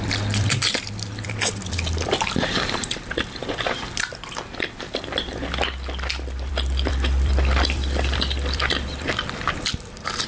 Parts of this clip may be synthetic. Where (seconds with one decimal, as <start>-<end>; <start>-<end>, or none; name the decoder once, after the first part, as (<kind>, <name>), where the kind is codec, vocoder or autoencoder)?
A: 0.0-3.9 (vocoder, BigVGAN v2); 6.5-10.3